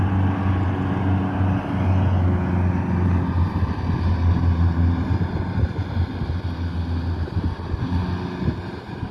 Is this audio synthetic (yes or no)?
no